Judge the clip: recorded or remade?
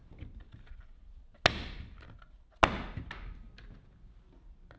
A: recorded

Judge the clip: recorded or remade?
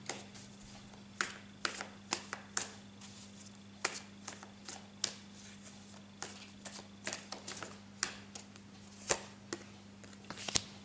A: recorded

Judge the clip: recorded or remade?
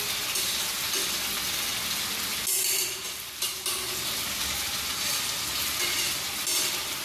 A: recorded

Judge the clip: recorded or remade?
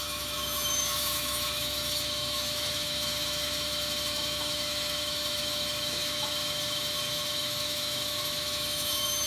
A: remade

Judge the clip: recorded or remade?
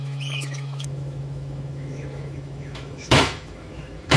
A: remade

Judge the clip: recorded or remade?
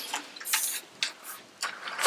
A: recorded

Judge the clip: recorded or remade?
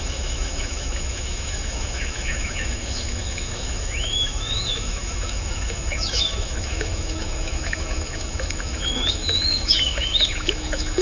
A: remade